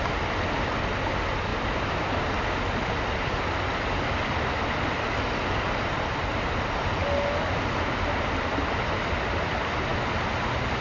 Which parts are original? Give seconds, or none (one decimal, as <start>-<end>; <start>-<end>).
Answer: 0.0-1.5; 2.0-10.8